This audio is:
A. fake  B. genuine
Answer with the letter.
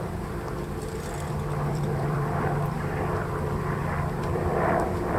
A